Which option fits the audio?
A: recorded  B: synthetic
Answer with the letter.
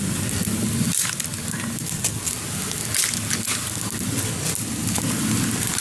A